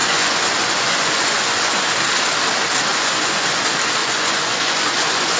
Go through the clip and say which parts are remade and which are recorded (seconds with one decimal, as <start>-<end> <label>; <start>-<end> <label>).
0.0-1.9 remade; 1.9-2.9 recorded; 2.9-3.6 remade; 3.6-4.0 recorded; 4.0-5.4 remade